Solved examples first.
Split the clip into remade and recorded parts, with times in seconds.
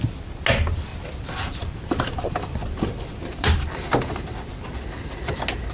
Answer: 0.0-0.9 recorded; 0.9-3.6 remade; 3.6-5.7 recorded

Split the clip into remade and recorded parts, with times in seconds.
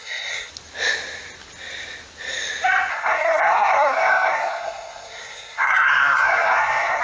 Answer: 0.0-0.5 remade; 0.5-2.9 recorded; 2.9-7.0 remade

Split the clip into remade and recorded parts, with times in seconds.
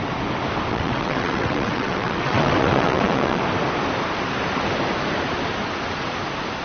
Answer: 0.0-0.7 recorded; 0.7-3.4 remade; 3.4-6.6 recorded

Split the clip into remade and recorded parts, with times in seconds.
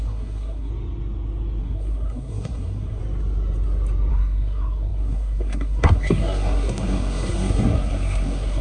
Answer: 0.0-0.7 remade; 0.7-1.6 recorded; 1.6-3.0 remade; 3.0-4.1 recorded; 4.1-8.6 remade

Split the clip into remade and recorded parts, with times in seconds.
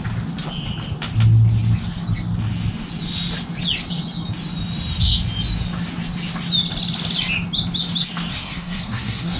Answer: 0.0-8.3 recorded; 8.3-9.4 remade